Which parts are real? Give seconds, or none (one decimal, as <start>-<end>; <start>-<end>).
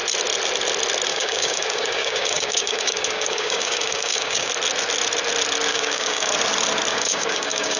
0.0-1.1; 4.5-5.7; 6.3-6.9